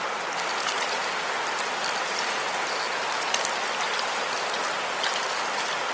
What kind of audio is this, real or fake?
real